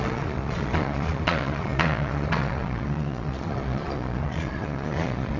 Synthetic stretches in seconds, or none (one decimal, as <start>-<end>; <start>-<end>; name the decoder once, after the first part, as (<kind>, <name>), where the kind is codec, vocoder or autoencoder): 0.0-5.4 (vocoder, Vocos)